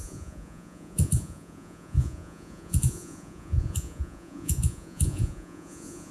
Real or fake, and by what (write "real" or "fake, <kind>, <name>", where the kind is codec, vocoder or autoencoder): fake, vocoder, Vocos